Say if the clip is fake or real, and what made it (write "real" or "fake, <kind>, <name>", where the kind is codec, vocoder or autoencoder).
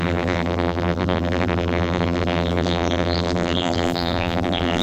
fake, vocoder, BigVGAN v2